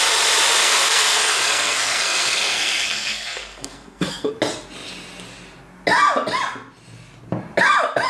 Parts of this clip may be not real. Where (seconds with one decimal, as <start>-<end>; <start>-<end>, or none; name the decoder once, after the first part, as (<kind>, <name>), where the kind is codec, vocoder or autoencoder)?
0.6-4.3 (codec, SNAC)